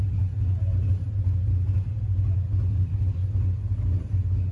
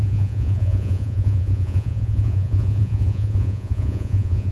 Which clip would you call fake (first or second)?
second